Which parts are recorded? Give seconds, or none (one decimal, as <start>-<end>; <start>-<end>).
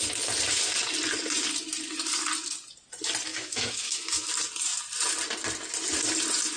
0.0-3.3; 4.3-6.6